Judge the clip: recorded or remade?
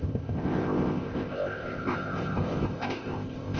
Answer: remade